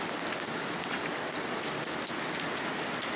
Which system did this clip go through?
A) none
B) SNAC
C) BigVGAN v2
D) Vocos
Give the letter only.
A